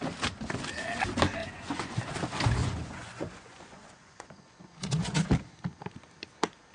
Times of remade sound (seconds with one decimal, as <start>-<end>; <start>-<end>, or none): 1.4-2.0; 2.6-5.3